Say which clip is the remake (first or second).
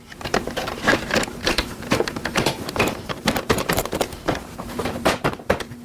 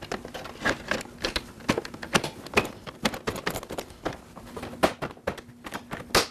first